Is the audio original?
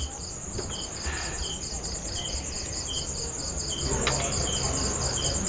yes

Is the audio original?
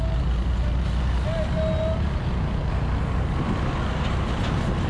yes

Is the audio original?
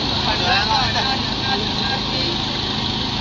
yes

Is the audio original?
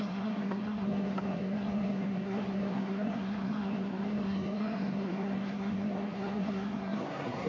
no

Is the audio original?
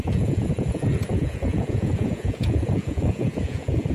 no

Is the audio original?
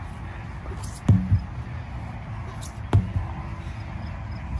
yes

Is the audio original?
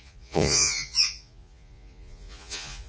no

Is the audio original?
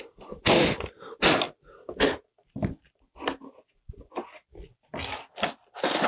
yes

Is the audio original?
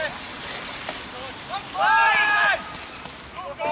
yes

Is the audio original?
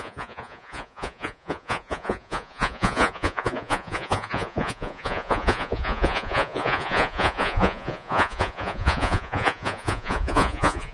no